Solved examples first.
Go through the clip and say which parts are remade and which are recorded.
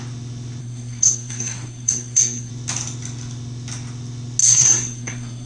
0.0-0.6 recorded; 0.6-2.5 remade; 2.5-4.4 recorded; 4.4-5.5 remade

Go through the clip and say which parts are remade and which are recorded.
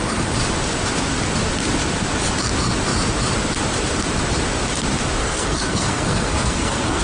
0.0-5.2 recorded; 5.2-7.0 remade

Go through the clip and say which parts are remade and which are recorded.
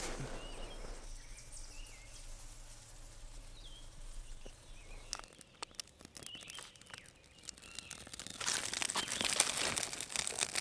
0.0-10.6 recorded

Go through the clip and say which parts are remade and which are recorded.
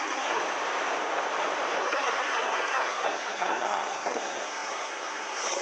0.0-0.4 remade; 0.4-1.8 recorded; 1.8-5.6 remade